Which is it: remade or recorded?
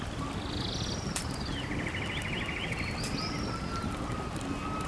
recorded